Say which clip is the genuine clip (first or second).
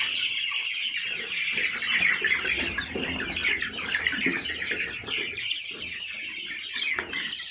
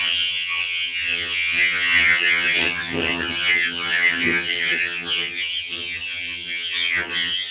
first